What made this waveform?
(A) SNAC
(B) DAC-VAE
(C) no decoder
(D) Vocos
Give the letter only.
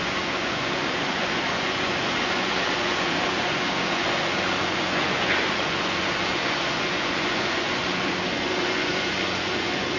D